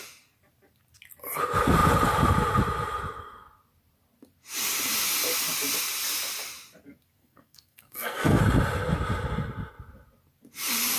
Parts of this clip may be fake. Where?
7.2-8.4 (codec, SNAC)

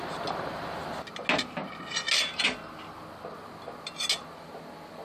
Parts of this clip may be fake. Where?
none